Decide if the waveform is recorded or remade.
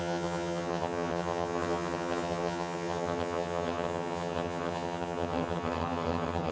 remade